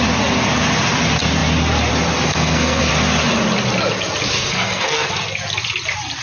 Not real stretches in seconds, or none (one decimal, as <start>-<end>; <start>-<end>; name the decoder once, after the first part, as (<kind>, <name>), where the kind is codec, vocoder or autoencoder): 2.3-2.9 (codec, SNAC); 4.4-5.1